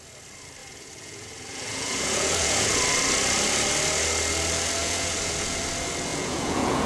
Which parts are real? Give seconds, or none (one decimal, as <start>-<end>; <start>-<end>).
0.0-0.6; 2.8-4.8; 5.6-6.1